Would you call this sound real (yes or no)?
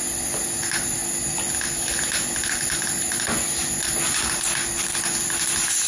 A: yes